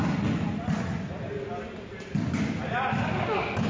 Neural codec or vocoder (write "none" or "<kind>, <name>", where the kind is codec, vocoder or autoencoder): none